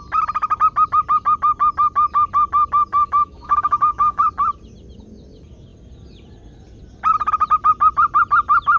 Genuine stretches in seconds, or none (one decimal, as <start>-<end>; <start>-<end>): 0.0-2.9; 4.2-8.8